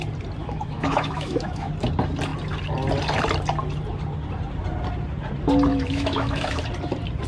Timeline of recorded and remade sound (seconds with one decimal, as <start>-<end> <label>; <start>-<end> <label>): 0.0-0.4 recorded; 0.4-1.7 remade; 1.7-5.7 recorded; 5.7-6.6 remade; 6.6-7.3 recorded